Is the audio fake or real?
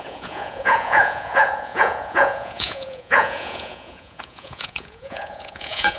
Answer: fake